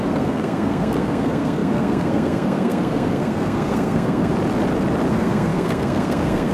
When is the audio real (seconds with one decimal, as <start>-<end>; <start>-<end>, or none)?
4.3-5.1